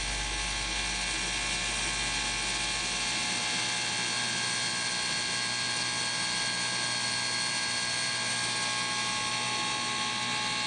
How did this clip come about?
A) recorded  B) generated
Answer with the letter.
A